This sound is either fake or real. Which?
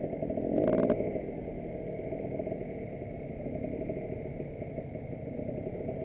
real